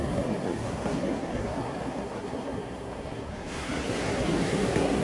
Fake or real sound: fake